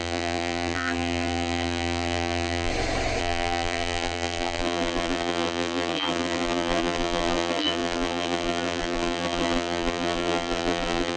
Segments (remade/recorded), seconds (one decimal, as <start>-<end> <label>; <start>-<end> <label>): 0.0-2.7 remade; 2.7-3.2 recorded; 3.2-11.2 remade